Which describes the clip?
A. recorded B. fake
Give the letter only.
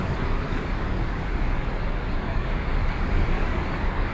B